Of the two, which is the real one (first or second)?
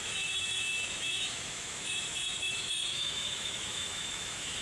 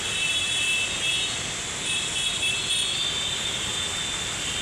second